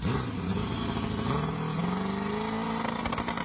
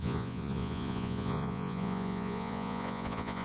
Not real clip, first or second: second